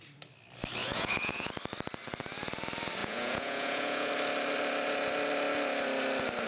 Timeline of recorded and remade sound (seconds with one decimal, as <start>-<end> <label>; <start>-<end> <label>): 0.0-0.8 recorded; 0.8-1.5 remade; 1.5-3.0 recorded; 3.0-4.1 remade; 4.1-6.5 recorded